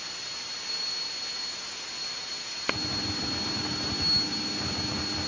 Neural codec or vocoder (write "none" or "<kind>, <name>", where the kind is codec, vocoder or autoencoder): none